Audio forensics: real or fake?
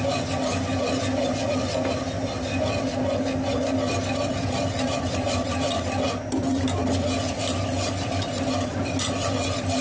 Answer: real